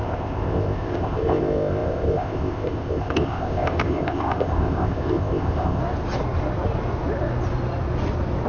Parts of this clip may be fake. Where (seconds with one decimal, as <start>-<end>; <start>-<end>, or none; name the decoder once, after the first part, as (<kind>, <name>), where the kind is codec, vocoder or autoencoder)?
0.0-5.8 (codec, ZipCodec)